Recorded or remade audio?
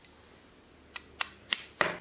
recorded